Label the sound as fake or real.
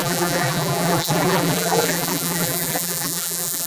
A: fake